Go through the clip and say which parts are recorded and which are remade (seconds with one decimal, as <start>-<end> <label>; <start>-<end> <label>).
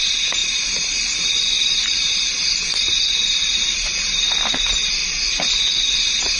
0.0-5.0 remade; 5.0-5.7 recorded; 5.7-6.4 remade